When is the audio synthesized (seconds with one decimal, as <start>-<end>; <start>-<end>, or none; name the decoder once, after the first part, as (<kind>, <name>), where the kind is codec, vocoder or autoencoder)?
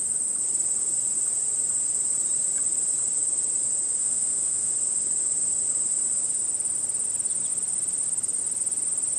4.0-4.7 (autoencoder, DAC-VAE)